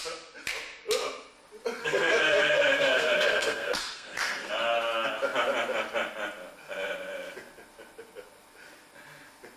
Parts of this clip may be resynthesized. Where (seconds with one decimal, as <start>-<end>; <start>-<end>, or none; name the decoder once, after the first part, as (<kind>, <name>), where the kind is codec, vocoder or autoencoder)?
1.8-4.5 (codec, SNAC)